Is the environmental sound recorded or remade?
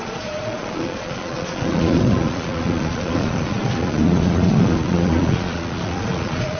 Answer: remade